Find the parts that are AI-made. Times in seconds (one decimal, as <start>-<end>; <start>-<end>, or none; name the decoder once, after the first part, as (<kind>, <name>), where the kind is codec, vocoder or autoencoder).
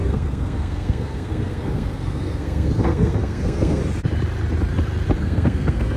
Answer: 0.0-3.8 (codec, SNAC); 5.2-6.0